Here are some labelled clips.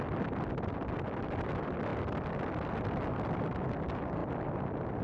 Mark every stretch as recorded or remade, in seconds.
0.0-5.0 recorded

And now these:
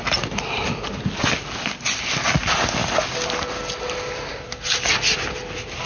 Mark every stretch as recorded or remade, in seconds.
0.0-5.9 recorded

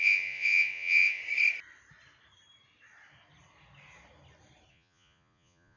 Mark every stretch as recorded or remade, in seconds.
0.0-1.2 remade; 1.2-4.7 recorded; 4.7-5.8 remade

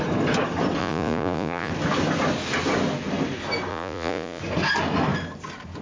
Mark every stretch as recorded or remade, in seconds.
0.0-0.8 recorded; 0.8-1.7 remade; 1.7-3.7 recorded; 3.7-4.4 remade; 4.4-5.8 recorded

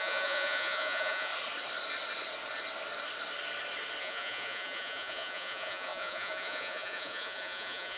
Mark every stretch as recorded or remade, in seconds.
0.0-1.3 remade; 1.3-4.0 recorded; 4.0-8.0 remade

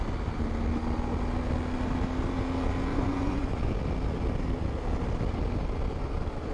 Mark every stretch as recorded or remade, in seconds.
0.0-2.9 recorded; 2.9-3.7 remade; 3.7-6.5 recorded

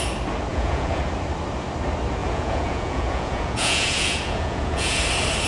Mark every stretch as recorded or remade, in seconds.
0.0-0.5 recorded; 0.5-1.0 remade; 1.0-2.2 recorded; 2.2-5.0 remade; 5.0-5.5 recorded